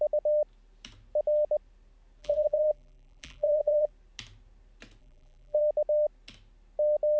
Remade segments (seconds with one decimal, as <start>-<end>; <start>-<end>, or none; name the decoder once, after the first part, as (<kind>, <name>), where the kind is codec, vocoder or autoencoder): 2.2-3.9 (vocoder, BigVGAN v2); 5.0-5.6